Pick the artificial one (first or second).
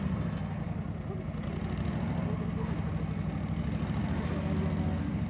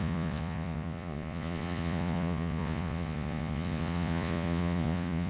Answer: second